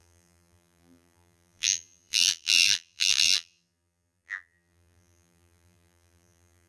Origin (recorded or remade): remade